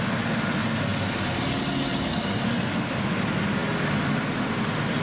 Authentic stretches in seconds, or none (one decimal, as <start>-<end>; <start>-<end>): 0.0-5.0